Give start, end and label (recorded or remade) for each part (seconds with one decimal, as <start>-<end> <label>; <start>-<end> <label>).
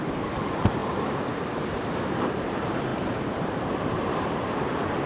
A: 0.0-5.1 remade